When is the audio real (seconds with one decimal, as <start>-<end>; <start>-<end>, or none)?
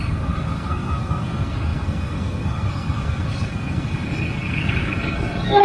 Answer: none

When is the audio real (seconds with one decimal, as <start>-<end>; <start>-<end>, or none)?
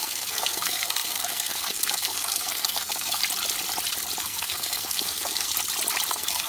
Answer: 3.2-4.2; 5.5-6.1